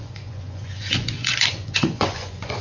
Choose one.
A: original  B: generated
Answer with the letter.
B